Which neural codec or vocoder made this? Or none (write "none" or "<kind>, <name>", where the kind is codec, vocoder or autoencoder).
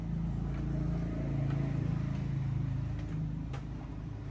none